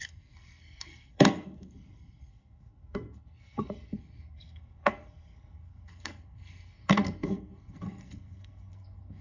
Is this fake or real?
fake